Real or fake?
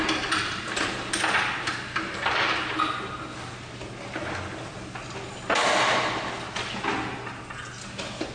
real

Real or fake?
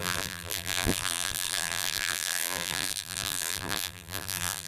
fake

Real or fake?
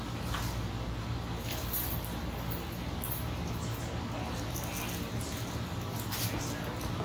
real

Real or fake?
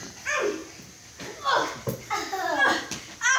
real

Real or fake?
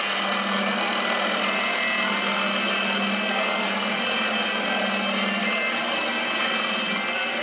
real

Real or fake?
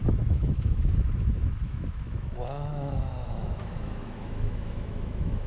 fake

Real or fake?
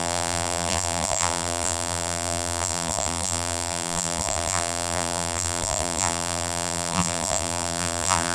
fake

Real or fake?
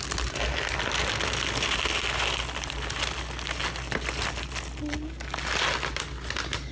real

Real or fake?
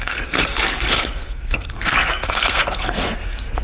fake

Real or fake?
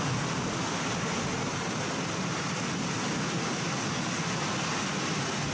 real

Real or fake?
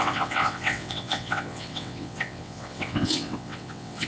fake